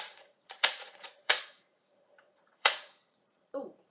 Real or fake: fake